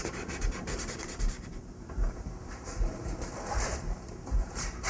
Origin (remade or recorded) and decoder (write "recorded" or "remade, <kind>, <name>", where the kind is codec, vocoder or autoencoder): remade, vocoder, BigVGAN v2